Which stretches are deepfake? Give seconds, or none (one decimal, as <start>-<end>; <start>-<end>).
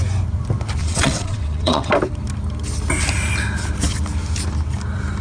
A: 0.8-1.9